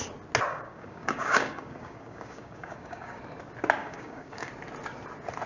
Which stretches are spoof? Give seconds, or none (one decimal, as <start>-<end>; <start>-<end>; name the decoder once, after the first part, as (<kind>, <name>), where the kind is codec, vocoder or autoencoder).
0.5-3.2 (codec, DAC); 3.8-4.5